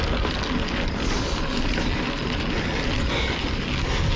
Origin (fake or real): real